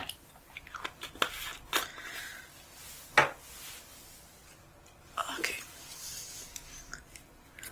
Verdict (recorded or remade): recorded